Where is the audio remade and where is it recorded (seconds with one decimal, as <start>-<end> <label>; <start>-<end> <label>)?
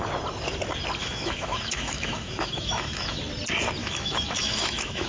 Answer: 0.0-1.0 recorded; 1.0-3.2 remade; 3.2-3.8 recorded; 3.8-5.1 remade